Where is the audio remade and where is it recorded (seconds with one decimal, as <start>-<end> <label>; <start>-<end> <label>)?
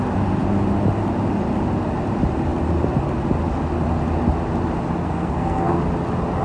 0.0-5.0 recorded; 5.0-5.8 remade; 5.8-6.4 recorded